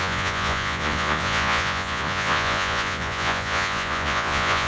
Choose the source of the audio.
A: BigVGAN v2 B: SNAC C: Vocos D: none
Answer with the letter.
C